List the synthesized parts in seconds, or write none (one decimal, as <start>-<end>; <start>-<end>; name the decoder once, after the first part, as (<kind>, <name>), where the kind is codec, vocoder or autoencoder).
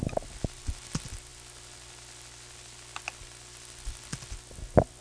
none